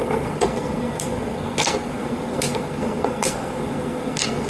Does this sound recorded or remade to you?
remade